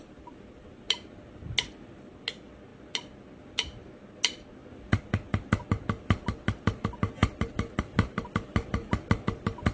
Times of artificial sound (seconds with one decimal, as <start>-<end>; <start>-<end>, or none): none